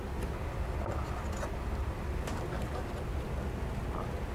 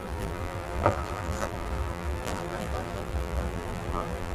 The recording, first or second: first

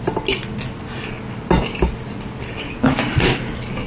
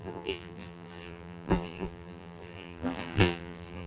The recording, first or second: first